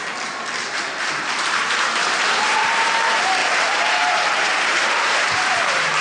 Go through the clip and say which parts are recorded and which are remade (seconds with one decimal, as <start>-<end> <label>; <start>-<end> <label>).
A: 0.0-0.7 recorded; 0.7-6.0 remade